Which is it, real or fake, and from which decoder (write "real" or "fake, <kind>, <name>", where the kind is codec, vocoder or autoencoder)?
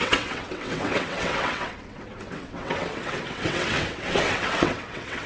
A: fake, vocoder, WaveNeXt